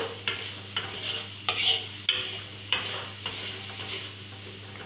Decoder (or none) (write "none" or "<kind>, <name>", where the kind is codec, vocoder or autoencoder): none